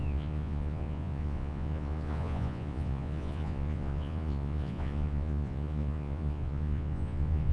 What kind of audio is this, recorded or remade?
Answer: remade